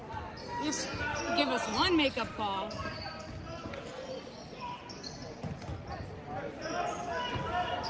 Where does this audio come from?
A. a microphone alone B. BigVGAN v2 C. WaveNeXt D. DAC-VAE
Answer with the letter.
A